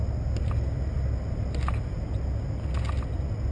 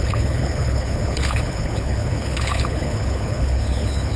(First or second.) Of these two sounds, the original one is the first